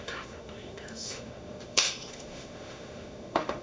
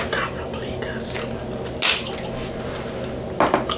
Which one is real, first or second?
second